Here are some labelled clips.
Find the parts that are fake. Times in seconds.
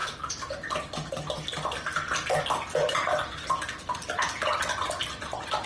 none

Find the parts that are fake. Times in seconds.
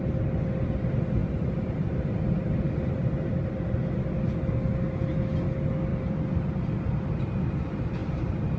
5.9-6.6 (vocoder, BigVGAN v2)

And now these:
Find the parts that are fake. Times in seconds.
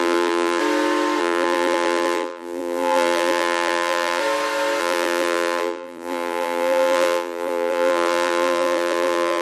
0.0-0.6 (vocoder, BigVGAN v2); 1.2-4.2; 4.8-9.4